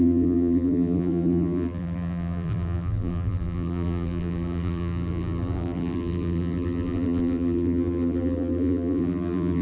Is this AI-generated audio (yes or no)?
yes